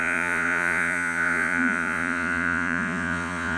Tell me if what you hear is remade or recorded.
remade